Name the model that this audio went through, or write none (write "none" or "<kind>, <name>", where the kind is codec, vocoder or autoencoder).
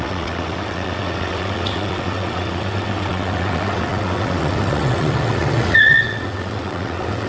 vocoder, WaveNeXt